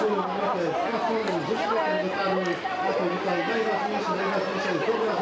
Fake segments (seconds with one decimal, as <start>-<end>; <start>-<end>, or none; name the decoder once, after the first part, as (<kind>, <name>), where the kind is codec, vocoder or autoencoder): 1.2-4.2 (vocoder, BigVGAN v2)